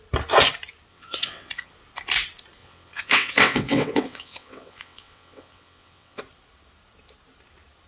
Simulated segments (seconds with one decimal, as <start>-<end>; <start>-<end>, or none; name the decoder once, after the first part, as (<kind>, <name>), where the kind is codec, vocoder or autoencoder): 0.9-1.7 (vocoder, WaveNeXt); 2.6-6.2